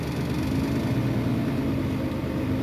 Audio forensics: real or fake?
real